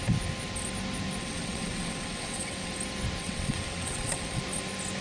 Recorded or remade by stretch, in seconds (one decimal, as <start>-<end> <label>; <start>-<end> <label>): 0.0-1.2 recorded; 1.2-2.7 remade; 2.7-3.2 recorded; 3.2-4.4 remade; 4.4-5.0 recorded